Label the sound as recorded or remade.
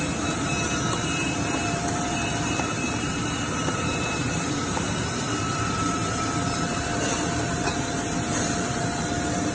remade